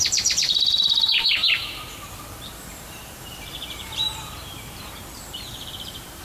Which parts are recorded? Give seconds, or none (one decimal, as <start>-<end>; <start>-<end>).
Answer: 1.4-2.1

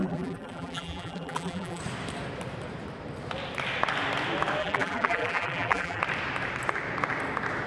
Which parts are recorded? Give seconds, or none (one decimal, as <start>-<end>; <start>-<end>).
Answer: 1.8-4.6; 6.0-7.7

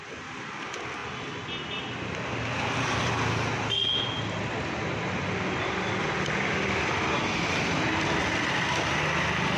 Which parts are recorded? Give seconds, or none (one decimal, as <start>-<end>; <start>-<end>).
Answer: 0.0-9.6

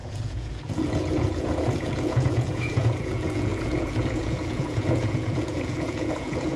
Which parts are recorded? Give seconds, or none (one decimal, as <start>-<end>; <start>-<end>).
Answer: none

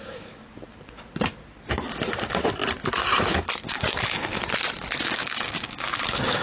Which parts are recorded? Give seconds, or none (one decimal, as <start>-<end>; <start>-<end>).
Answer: 0.4-3.7; 4.3-5.0

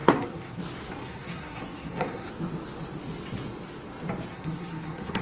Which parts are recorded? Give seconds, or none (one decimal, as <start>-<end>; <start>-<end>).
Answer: 0.6-1.0; 2.3-4.3

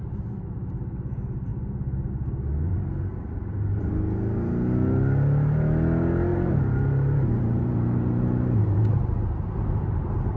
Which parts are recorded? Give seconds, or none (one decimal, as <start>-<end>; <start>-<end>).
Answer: 0.0-2.7; 3.9-6.3; 10.0-10.4

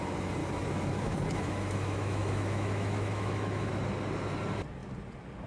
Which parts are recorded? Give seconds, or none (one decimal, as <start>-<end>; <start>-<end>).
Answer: 0.0-0.4; 3.7-5.5